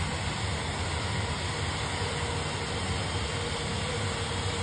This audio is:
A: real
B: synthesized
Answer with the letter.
A